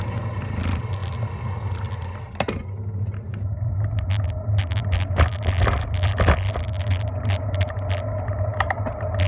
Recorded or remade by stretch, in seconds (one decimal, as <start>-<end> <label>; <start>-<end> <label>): 0.0-9.3 recorded